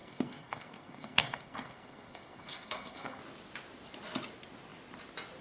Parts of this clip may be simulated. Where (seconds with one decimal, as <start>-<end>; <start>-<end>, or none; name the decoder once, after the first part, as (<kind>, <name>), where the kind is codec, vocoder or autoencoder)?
0.0-3.2 (codec, SNAC)

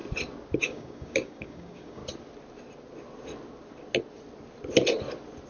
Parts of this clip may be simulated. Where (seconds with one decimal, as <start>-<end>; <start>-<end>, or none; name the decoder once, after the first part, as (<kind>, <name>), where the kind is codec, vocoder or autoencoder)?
0.6-2.0 (codec, DAC)

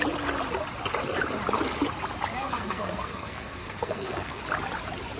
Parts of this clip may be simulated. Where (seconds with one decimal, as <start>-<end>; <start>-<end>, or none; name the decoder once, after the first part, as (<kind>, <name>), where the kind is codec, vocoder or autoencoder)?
2.4-4.4 (codec, SNAC)

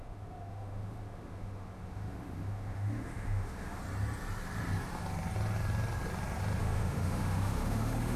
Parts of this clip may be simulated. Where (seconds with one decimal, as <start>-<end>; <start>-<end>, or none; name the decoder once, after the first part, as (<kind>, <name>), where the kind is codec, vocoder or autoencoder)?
0.0-3.8 (autoencoder, DAC-VAE); 6.6-8.2

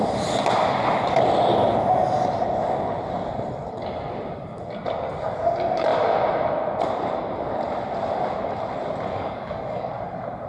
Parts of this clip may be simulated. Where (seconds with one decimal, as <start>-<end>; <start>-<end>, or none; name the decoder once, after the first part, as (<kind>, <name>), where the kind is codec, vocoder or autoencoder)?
9.1-9.9 (codec, DAC)

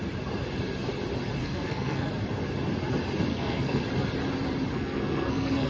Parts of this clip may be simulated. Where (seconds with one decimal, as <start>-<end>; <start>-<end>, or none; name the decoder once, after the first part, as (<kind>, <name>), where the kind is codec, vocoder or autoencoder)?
1.4-2.1 (codec, SNAC); 3.3-3.8; 4.7-5.7